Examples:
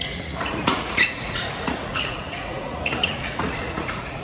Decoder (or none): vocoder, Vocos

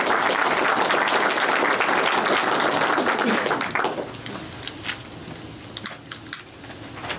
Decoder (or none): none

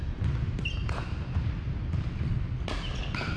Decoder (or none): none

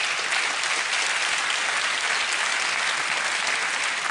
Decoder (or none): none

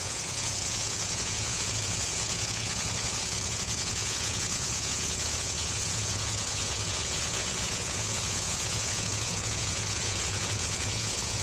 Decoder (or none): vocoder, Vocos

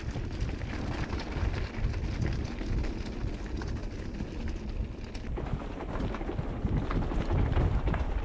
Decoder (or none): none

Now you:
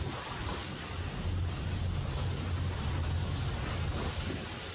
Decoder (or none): none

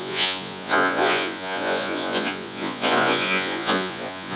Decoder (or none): vocoder, Vocos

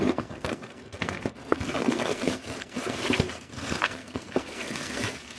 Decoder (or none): codec, SNAC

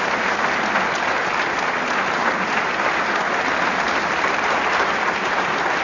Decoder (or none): none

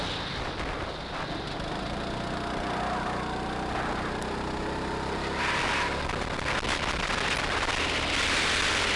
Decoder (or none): none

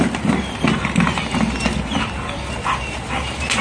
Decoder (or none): none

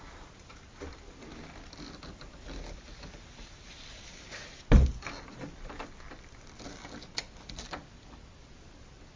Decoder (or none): none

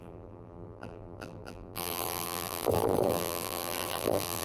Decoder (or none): vocoder, BigVGAN v2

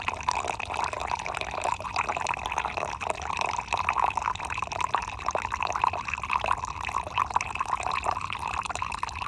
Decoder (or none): none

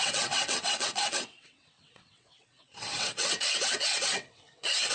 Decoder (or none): vocoder, WaveNeXt